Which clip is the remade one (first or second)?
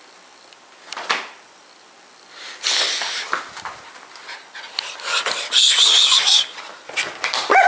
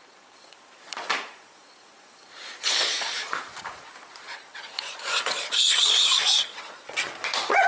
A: second